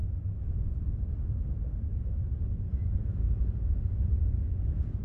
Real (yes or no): yes